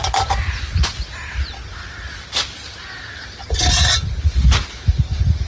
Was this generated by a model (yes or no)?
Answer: no